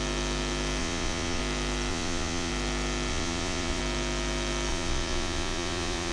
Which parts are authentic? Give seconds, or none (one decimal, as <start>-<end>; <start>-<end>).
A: 0.0-0.8; 1.4-1.9; 2.5-3.1; 3.8-4.7